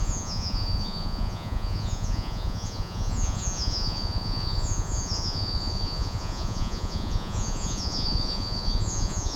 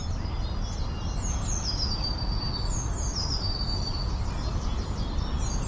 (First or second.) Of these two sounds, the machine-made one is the first